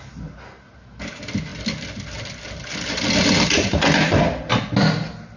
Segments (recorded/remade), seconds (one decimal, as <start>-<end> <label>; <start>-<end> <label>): 0.0-1.5 recorded; 1.5-4.5 remade; 4.5-5.4 recorded